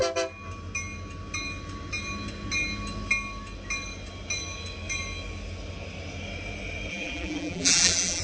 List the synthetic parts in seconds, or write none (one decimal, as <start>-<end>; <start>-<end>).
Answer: 6.9-8.2